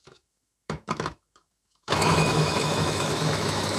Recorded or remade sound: remade